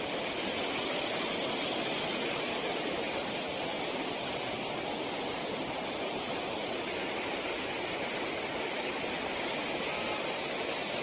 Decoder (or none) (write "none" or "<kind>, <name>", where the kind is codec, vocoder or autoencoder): none